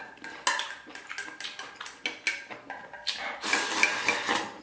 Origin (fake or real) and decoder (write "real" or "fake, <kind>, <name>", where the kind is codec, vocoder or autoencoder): real